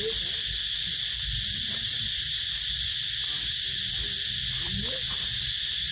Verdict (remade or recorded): recorded